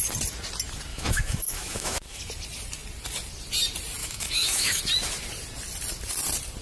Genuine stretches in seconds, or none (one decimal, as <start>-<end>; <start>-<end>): 0.0-0.9; 2.2-4.0; 4.8-6.6